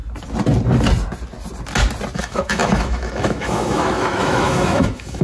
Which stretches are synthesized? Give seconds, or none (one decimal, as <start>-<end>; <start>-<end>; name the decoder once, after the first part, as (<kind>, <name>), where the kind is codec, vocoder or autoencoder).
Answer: 2.2-5.2 (autoencoder, DAC-VAE)